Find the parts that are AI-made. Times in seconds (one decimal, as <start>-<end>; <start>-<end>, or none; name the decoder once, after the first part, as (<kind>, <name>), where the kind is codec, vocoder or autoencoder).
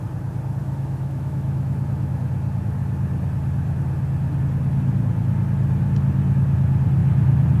0.6-2.2 (autoencoder, DAC-VAE)